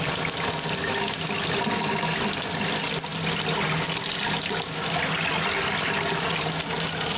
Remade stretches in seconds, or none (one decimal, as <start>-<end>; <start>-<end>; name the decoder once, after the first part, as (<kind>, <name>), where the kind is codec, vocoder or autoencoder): none